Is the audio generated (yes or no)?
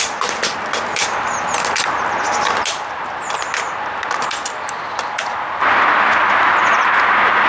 no